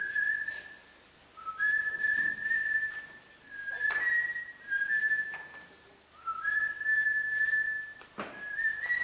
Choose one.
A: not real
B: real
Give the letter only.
B